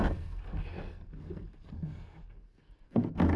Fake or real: fake